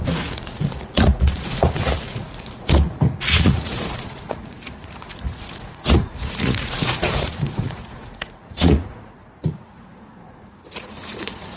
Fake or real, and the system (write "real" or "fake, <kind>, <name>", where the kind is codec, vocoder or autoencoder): fake, vocoder, Vocos